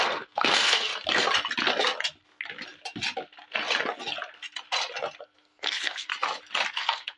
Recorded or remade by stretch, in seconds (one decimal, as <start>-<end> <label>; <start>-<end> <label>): 0.0-0.9 remade; 0.9-5.2 recorded; 5.2-6.1 remade; 6.1-6.7 recorded; 6.7-7.2 remade